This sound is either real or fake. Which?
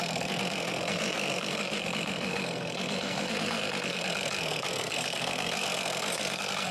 fake